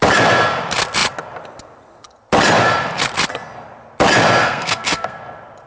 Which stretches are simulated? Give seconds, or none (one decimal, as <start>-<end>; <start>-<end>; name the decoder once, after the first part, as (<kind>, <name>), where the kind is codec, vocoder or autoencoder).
4.4-5.2 (codec, SNAC)